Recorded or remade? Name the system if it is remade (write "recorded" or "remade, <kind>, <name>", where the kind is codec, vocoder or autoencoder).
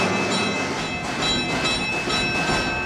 recorded